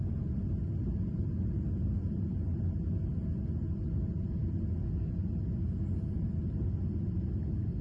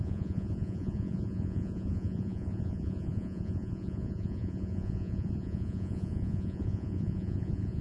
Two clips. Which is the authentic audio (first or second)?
first